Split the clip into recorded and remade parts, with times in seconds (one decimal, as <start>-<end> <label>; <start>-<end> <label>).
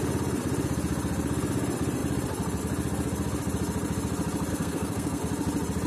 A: 0.0-4.5 recorded; 4.5-5.2 remade; 5.2-5.9 recorded